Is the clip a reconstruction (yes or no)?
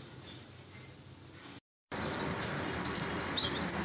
yes